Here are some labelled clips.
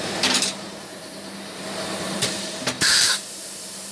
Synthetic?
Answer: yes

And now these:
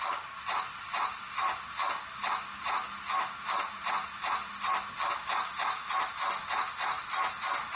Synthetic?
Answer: no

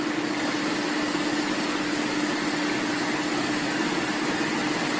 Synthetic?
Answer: no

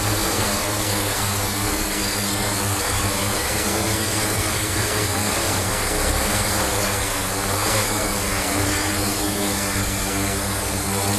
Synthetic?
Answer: yes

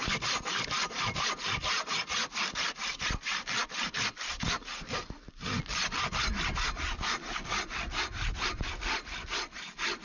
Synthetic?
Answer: no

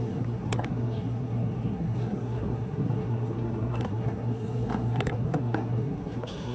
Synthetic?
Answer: yes